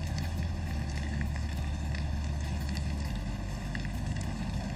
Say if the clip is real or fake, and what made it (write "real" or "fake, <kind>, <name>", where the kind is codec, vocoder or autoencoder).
fake, autoencoder, DAC-VAE